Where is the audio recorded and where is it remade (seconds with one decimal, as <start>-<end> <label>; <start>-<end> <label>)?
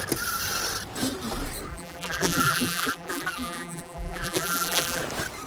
0.0-1.7 recorded; 1.7-5.0 remade; 5.0-5.5 recorded